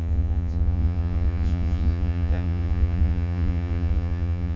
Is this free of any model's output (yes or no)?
no